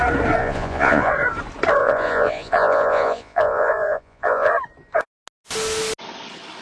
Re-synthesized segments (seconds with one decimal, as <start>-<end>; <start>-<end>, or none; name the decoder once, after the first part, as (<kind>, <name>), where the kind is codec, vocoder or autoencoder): 0.4-1.1 (vocoder, Vocos); 1.8-4.5

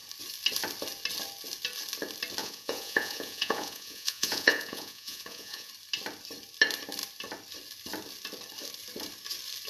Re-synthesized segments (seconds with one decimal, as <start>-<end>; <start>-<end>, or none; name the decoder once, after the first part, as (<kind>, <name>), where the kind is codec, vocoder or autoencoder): 2.4-5.7 (vocoder, Vocos)

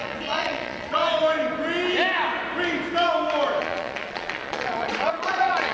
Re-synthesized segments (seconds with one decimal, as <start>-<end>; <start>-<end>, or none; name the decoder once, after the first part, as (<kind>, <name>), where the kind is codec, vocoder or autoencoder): 0.0-1.0 (vocoder, Vocos); 3.6-5.7